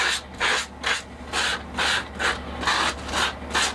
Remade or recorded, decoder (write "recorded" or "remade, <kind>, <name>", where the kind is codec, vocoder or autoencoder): recorded